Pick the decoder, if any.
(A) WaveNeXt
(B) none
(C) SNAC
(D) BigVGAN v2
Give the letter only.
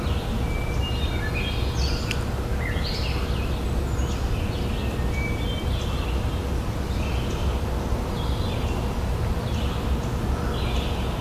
B